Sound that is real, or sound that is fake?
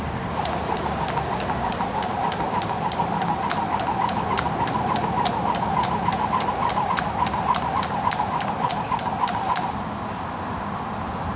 real